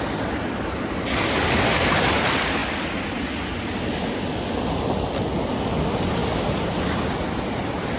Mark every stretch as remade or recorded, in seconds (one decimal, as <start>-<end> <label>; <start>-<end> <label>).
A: 0.0-8.0 recorded